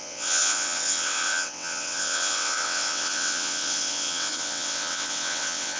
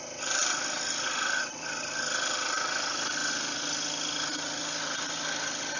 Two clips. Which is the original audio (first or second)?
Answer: second